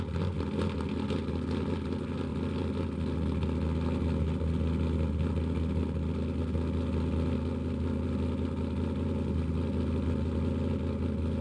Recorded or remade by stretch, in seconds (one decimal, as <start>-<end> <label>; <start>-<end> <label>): 0.0-11.4 recorded